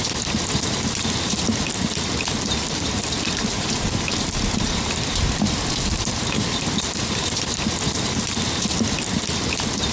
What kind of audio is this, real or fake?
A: real